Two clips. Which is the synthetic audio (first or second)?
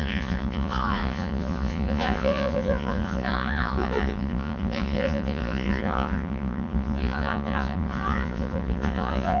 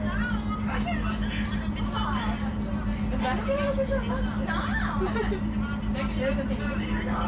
first